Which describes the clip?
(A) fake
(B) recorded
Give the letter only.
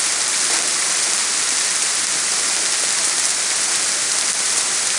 B